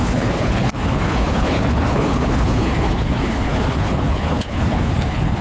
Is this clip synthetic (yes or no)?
yes